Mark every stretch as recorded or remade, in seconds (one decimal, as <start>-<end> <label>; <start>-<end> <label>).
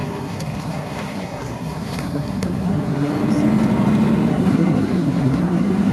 0.0-3.1 remade; 3.1-4.3 recorded; 4.3-5.9 remade